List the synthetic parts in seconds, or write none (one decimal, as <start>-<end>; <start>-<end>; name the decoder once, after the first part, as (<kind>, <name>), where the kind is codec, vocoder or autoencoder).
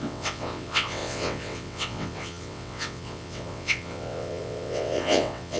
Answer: 0.0-5.6 (vocoder, WaveNeXt)